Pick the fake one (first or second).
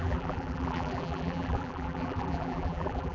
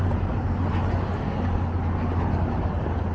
first